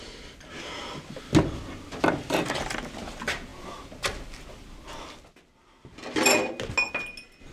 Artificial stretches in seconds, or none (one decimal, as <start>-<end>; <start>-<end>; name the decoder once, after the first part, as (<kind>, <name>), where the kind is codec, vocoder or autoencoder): none